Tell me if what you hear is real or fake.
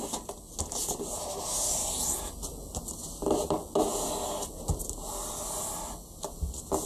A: real